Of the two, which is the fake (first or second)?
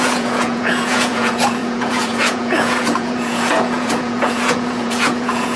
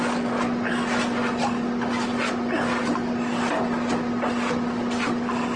first